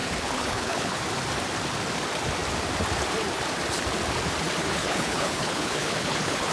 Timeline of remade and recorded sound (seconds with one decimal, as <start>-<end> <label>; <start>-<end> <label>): 0.0-1.0 remade; 1.0-4.6 recorded; 4.6-6.5 remade